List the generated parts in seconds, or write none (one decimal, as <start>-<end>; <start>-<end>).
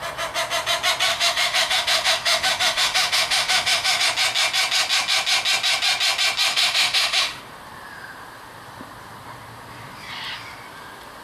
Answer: 1.1-4.0; 6.5-7.4